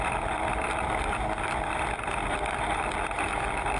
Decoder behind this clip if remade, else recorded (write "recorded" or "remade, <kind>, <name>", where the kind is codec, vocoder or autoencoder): remade, vocoder, BigVGAN v2